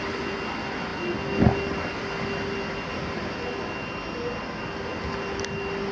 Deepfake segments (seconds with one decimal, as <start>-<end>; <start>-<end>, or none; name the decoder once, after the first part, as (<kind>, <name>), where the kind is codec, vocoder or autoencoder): none